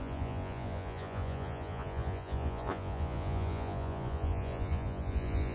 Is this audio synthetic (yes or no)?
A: yes